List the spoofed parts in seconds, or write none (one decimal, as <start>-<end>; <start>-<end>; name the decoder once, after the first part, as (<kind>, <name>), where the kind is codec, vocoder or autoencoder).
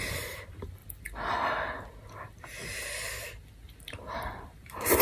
0.0-0.8 (vocoder, BigVGAN v2); 3.8-5.0